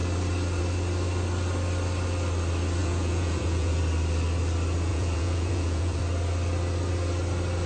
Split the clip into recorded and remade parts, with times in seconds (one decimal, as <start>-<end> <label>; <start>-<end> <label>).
0.0-2.8 recorded; 2.8-3.8 remade; 3.8-4.9 recorded; 4.9-6.0 remade; 6.0-7.7 recorded